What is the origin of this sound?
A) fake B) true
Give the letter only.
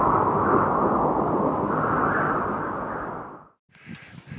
B